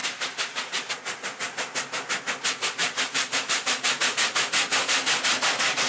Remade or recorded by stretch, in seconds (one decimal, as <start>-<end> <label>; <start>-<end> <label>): 0.0-0.9 remade; 0.9-2.8 recorded; 2.8-4.0 remade; 4.0-5.9 recorded

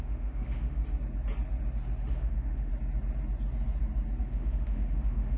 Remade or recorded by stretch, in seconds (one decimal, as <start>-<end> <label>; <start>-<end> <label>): 0.0-0.8 remade; 0.8-2.1 recorded; 2.1-2.7 remade; 2.7-4.2 recorded; 4.2-5.4 remade

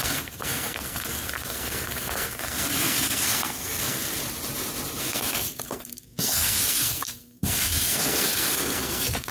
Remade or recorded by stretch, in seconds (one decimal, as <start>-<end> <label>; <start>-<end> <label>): 0.0-4.2 remade; 4.2-5.0 recorded; 5.0-9.3 remade